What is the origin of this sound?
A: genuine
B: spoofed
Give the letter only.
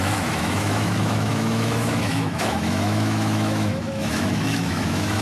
B